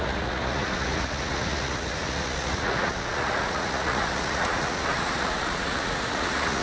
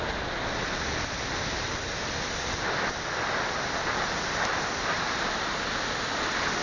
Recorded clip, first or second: second